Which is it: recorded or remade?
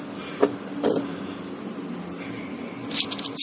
recorded